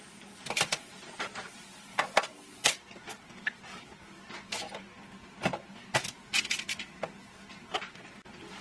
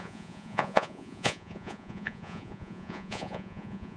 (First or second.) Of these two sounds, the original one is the first